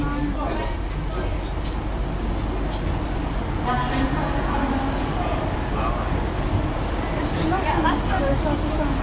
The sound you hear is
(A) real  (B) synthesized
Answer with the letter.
A